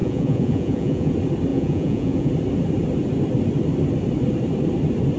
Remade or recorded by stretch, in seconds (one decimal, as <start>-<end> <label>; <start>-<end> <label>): 0.0-1.1 remade; 1.1-1.5 recorded; 1.5-2.3 remade; 2.3-5.2 recorded